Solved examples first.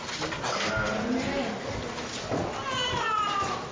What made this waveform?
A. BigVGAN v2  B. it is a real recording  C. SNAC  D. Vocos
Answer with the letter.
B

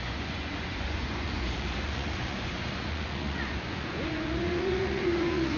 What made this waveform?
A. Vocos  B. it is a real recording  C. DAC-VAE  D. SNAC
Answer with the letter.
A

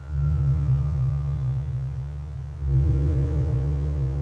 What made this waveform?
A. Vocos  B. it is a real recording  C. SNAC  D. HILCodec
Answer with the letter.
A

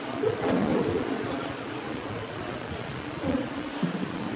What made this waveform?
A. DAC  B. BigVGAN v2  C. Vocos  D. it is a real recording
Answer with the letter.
C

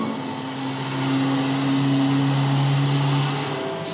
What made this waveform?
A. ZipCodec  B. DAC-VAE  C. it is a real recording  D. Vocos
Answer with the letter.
C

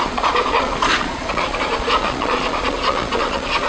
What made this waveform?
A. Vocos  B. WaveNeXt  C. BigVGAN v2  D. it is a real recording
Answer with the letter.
A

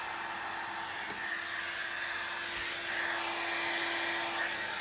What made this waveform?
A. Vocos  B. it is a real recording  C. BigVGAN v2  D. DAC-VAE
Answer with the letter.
B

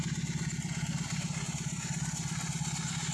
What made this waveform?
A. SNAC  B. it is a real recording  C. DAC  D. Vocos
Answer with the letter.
B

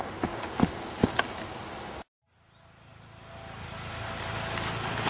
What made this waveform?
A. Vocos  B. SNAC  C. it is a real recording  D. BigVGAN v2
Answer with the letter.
C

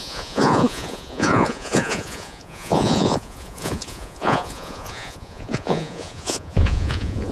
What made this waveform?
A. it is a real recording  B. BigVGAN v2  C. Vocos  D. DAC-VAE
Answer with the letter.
C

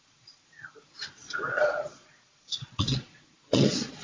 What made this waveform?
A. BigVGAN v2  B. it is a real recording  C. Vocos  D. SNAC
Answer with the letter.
C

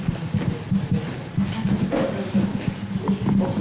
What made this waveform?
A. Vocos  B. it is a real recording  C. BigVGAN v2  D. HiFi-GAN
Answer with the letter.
B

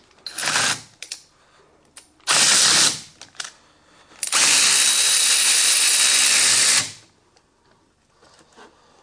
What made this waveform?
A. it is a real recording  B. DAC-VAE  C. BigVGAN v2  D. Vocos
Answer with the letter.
A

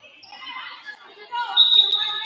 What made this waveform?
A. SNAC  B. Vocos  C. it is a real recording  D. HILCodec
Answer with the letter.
C